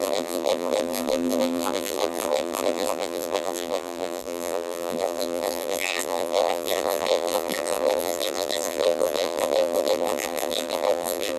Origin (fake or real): fake